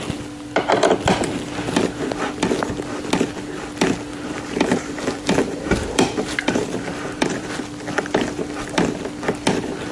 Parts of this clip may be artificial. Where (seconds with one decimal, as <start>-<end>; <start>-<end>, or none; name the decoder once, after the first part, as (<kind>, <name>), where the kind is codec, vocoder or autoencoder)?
4.1-7.5 (vocoder, BigVGAN v2)